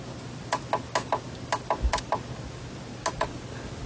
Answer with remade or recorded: recorded